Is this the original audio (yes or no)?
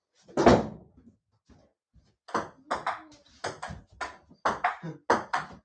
yes